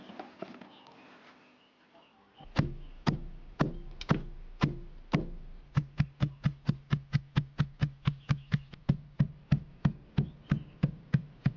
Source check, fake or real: real